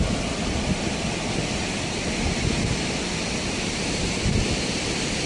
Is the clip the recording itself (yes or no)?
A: yes